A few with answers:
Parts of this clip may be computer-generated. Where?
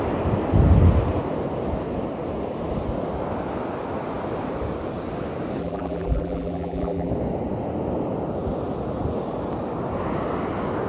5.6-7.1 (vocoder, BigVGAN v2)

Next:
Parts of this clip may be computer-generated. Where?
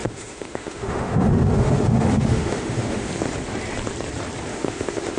0.0-3.1 (autoencoder, DAC-VAE); 4.5-5.2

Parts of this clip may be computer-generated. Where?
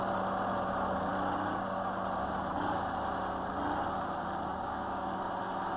4.5-5.2 (codec, DAC)